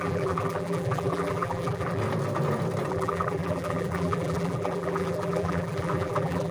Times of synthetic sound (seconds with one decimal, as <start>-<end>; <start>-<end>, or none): 0.0-2.0; 2.9-6.5